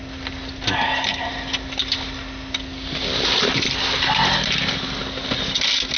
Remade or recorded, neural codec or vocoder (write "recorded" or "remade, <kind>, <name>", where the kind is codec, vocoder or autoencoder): recorded